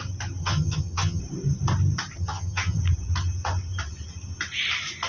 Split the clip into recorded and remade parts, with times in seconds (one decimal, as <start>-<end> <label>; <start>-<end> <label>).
0.0-0.4 recorded; 0.4-1.2 remade; 1.2-2.2 recorded; 2.2-2.8 remade; 2.8-5.1 recorded